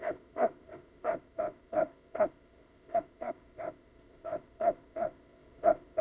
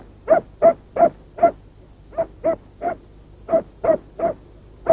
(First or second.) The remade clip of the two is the first